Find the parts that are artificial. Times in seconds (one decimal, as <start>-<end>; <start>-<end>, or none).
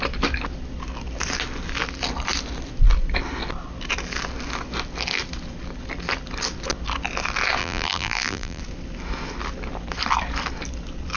7.6-8.6